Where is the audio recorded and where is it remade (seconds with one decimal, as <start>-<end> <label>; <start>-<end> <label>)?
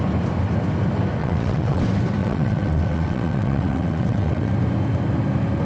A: 0.0-1.2 recorded; 1.2-1.8 remade; 1.8-2.2 recorded; 2.2-4.5 remade; 4.5-5.7 recorded